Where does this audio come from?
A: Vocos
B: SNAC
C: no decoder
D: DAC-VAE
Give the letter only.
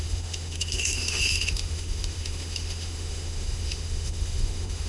D